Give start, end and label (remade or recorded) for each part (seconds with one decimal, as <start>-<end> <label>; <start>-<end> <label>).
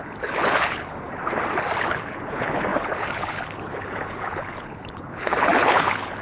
0.0-1.2 remade; 1.2-1.8 recorded; 1.8-6.2 remade